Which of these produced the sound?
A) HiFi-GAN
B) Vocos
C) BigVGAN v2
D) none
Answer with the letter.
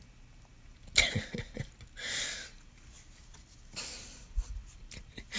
D